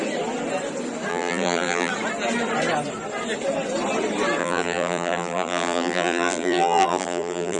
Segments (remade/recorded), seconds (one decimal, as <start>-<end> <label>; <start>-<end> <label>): 0.0-1.1 recorded; 1.1-1.9 remade; 1.9-4.4 recorded; 4.4-7.6 remade